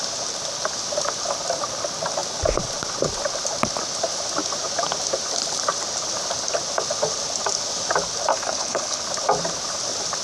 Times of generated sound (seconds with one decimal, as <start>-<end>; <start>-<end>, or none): 8.3-9.0